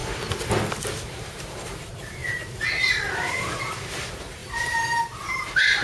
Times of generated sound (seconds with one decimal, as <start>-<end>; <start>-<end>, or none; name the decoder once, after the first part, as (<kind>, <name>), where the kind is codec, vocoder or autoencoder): 0.8-2.2 (vocoder, BigVGAN v2); 2.9-5.8